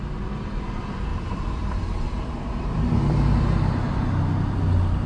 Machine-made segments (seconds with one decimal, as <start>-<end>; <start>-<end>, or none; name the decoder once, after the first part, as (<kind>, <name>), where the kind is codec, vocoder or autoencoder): 1.1-4.2 (vocoder, BigVGAN v2)